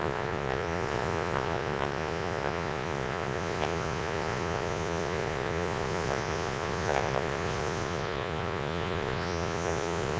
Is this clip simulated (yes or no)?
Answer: yes